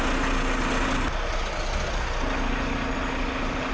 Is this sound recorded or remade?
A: recorded